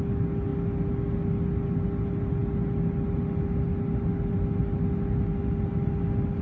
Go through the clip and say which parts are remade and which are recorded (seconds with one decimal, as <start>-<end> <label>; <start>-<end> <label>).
0.0-6.4 recorded